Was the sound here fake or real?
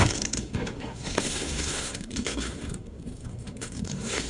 fake